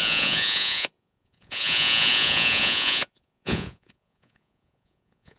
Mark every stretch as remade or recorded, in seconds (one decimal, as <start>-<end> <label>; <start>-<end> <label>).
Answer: 0.0-5.4 remade